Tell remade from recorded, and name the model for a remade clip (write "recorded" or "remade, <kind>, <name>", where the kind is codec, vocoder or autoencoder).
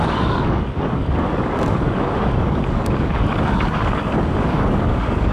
remade, codec, DAC